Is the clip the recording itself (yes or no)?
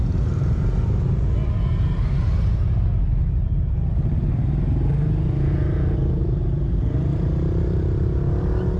yes